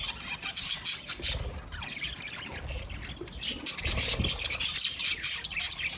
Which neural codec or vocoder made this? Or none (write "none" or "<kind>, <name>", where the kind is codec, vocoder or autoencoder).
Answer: none